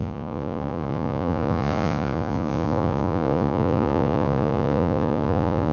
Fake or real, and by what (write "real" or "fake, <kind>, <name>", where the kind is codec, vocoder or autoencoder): fake, vocoder, Vocos